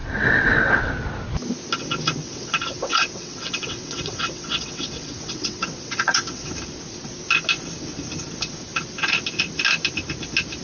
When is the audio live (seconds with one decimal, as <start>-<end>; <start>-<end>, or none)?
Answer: 0.9-2.2; 6.5-10.6